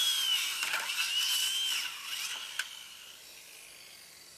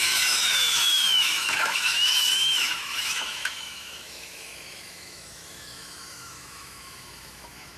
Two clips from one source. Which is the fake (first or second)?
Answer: second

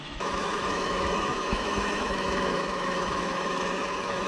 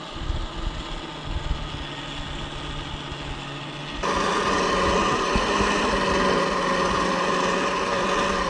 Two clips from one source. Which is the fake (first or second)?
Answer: first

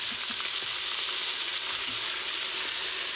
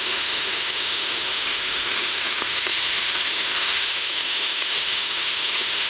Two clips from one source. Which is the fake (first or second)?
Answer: second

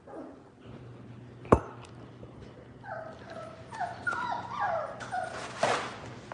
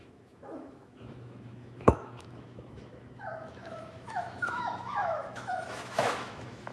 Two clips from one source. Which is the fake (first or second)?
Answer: second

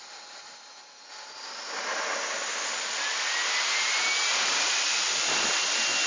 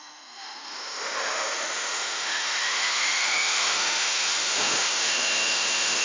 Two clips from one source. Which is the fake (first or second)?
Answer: second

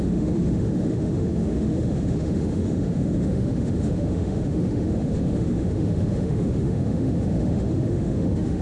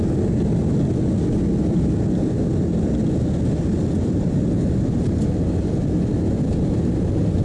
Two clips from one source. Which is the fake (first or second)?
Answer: first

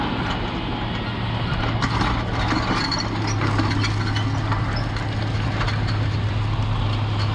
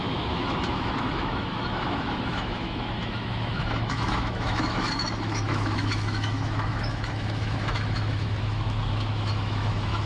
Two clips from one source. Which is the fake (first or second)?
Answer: second